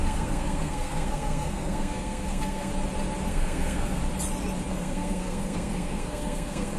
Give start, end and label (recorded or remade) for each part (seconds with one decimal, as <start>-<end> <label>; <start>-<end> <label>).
0.0-2.7 remade; 2.7-3.3 recorded; 3.3-4.0 remade; 4.0-4.7 recorded; 4.7-6.8 remade